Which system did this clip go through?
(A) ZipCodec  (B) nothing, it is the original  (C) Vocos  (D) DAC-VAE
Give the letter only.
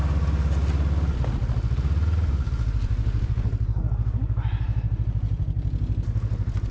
B